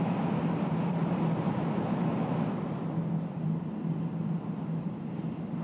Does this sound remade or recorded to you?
recorded